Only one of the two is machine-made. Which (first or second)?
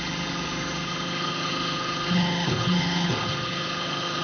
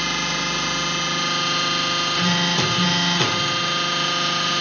first